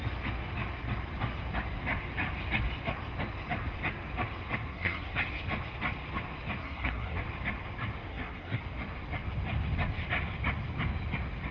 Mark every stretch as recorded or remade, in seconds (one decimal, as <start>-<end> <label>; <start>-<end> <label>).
0.0-4.7 recorded; 4.7-5.2 remade; 5.2-6.6 recorded; 6.6-7.2 remade; 7.2-8.1 recorded; 8.1-8.6 remade; 8.6-11.5 recorded